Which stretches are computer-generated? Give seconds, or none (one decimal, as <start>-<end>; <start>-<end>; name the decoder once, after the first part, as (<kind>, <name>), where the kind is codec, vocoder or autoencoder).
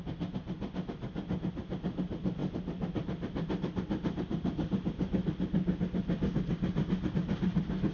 none